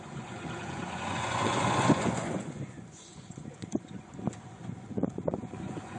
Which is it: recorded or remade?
remade